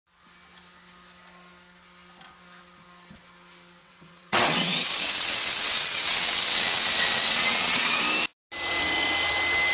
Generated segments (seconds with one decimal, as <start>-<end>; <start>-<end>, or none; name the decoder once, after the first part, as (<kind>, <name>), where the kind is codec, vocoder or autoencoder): 3.8-8.0 (vocoder, WaveNeXt)

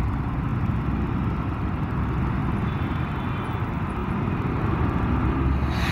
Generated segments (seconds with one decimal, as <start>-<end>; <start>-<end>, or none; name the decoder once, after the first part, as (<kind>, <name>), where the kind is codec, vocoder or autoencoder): none

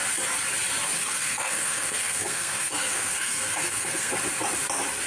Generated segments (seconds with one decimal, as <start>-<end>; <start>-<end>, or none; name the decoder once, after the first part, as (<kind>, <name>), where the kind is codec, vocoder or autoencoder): 1.0-4.1 (codec, SNAC)

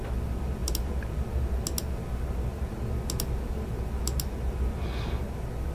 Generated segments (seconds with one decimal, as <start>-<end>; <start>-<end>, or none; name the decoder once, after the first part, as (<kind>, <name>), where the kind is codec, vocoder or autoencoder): none

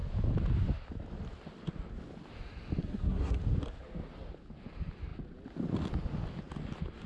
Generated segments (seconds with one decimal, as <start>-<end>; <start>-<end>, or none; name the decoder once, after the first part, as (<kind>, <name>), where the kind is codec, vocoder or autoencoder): 2.8-3.4 (codec, SNAC)

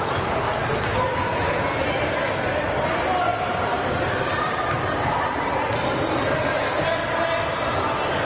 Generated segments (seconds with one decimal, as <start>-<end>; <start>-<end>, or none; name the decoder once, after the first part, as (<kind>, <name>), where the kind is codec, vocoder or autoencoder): 0.6-1.5 (vocoder, BigVGAN v2); 3.3-5.4